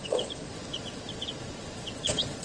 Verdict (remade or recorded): remade